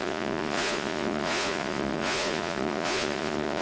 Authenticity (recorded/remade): remade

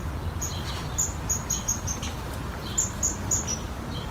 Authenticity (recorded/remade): recorded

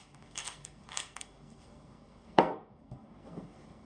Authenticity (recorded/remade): remade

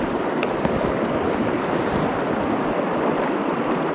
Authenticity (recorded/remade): recorded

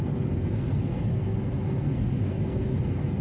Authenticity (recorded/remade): remade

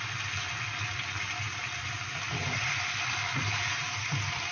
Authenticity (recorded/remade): recorded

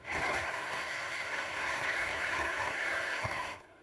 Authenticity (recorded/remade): remade